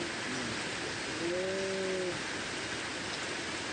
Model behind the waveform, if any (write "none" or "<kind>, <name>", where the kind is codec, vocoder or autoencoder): none